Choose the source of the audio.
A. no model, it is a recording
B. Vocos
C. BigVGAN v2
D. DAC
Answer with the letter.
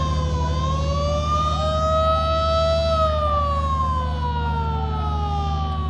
A